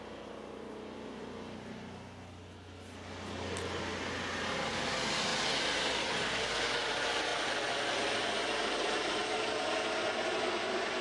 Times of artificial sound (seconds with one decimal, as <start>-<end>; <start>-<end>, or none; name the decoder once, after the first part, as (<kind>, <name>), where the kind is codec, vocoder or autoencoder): 5.3-6.1 (vocoder, BigVGAN v2); 7.3-9.2